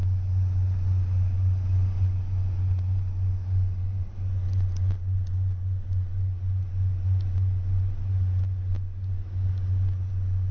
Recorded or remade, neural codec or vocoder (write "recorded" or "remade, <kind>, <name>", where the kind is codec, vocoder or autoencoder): recorded